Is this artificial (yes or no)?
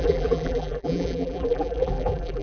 yes